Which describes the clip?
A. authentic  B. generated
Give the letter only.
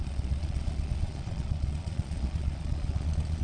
B